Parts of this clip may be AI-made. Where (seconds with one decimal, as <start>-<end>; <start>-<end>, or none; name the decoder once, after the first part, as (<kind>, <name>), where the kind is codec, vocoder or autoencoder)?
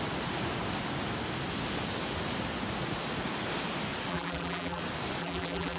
4.1-4.8 (vocoder, BigVGAN v2); 5.2-5.8